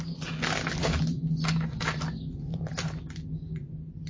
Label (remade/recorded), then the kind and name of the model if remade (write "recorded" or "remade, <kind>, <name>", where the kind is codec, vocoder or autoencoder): recorded